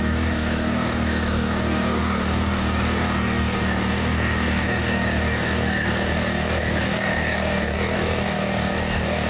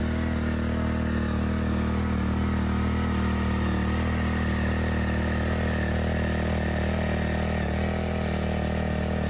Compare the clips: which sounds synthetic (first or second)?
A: first